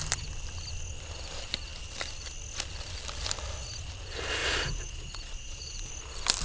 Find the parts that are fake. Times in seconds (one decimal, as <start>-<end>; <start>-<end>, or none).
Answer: 4.4-5.9